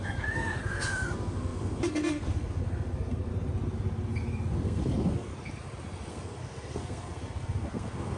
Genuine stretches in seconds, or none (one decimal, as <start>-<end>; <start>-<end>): 3.3-4.5; 5.3-6.1